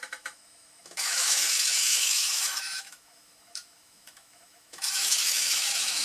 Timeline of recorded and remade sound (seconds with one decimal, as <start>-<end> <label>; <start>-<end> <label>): 0.0-6.0 remade